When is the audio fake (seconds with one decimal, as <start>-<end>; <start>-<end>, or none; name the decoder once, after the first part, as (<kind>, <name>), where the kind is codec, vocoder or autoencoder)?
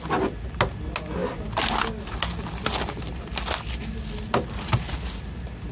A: none